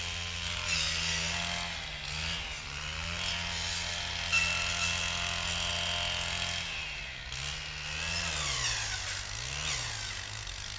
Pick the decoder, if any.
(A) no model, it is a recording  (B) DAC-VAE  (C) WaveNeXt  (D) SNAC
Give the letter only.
A